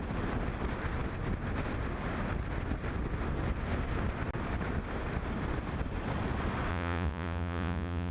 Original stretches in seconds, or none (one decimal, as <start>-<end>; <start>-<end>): 0.0-6.7